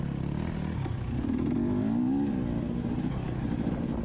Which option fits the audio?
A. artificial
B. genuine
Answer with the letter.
B